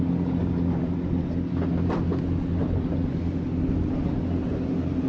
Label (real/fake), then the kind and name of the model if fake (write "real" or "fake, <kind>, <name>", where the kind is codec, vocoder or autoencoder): real